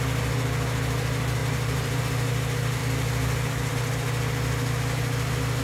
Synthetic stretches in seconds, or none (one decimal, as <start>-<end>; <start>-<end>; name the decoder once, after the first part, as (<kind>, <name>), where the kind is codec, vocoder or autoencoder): 1.4-2.0 (vocoder, BigVGAN v2)